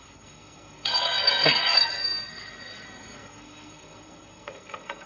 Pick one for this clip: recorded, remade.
remade